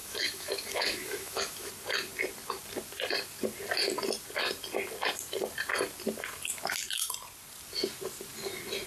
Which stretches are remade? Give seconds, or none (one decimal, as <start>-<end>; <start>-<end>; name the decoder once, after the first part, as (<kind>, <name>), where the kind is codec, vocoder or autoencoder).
0.0-1.7 (autoencoder, DAC-VAE)